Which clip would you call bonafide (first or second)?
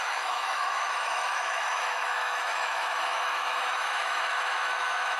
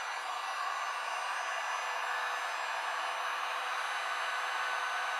second